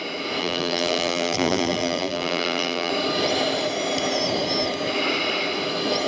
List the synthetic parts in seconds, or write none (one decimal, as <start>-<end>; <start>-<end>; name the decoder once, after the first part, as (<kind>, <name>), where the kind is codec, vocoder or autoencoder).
0.4-2.9 (vocoder, BigVGAN v2)